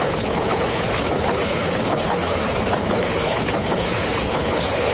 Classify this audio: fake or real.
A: fake